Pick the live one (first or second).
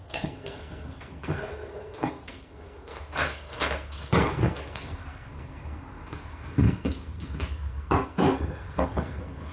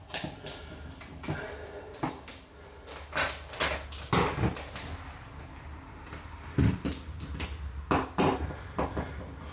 second